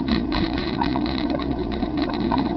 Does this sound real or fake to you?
fake